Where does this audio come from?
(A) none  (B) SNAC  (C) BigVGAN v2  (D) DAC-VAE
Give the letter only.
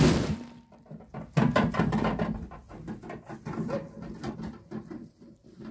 A